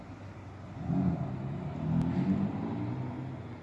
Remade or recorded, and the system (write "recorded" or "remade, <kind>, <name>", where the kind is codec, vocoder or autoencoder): recorded